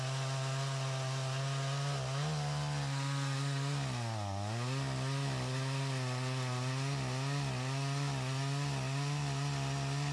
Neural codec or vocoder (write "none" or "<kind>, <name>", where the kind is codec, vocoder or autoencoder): none